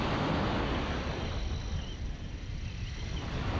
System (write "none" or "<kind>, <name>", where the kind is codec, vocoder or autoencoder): none